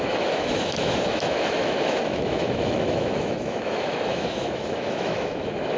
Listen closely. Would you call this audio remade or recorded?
remade